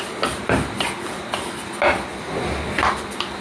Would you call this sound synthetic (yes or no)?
no